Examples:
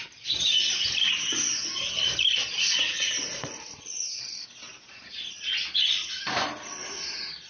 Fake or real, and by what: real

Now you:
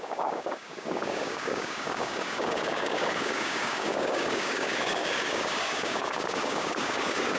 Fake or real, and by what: fake, codec, DAC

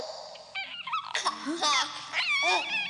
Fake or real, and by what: real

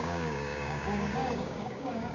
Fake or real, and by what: fake, codec, DAC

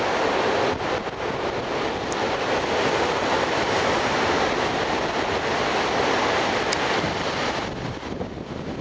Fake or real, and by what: real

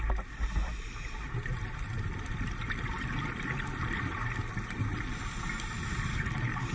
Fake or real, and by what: real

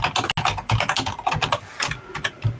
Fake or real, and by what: real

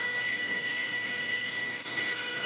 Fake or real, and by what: fake, codec, DAC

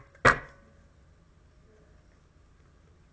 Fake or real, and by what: real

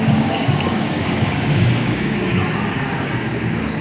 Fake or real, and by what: fake, codec, DAC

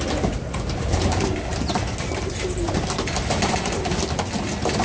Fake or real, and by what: real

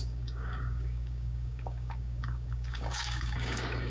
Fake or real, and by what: fake, codec, DAC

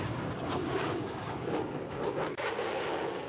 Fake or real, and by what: fake, codec, DAC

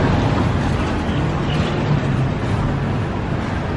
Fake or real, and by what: real